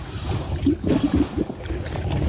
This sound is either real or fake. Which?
real